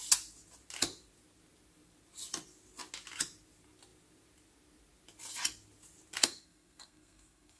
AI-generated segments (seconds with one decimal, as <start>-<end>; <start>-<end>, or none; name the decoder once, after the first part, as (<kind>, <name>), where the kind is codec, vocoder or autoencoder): 6.2-7.6 (codec, SNAC)